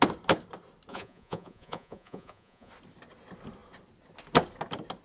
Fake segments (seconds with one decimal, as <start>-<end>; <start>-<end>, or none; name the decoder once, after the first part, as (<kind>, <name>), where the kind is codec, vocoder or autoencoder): 0.9-2.7 (vocoder, Vocos)